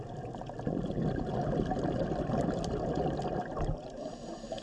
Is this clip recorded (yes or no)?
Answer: yes